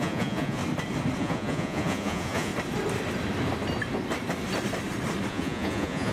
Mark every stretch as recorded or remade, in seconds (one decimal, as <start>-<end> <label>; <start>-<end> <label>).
0.0-0.6 remade; 0.6-1.2 recorded; 1.2-2.5 remade; 2.5-5.3 recorded; 5.3-6.1 remade